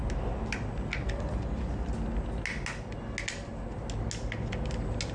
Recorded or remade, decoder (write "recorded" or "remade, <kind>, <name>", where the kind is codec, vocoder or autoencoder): recorded